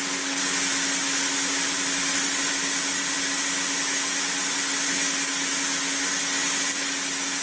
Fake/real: real